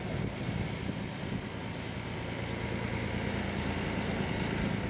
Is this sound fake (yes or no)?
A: no